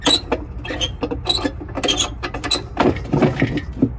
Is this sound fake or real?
real